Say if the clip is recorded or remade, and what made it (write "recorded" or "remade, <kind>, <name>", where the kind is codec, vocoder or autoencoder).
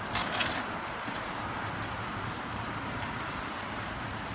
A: recorded